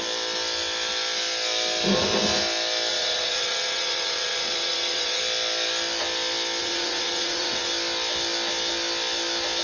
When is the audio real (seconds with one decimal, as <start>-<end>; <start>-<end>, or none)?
0.0-2.9; 5.2-6.6; 7.7-9.6